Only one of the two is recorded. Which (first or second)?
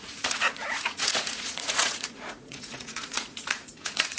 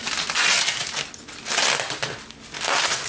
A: second